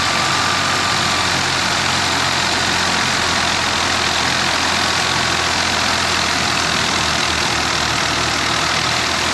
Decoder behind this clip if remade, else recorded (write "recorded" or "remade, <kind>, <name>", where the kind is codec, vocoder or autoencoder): recorded